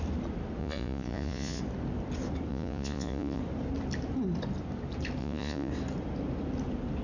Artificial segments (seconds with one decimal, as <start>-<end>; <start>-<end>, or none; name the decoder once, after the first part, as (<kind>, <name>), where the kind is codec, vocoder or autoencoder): 0.6-1.6 (vocoder, Vocos); 2.5-3.4; 5.2-5.7